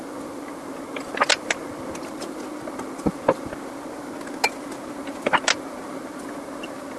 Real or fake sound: real